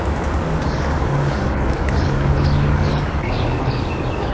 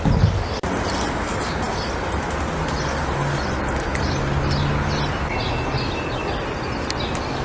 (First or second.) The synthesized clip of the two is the first